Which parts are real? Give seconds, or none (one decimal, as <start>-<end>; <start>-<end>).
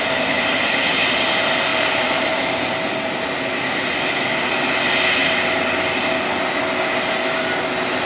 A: 0.0-1.7; 2.7-8.1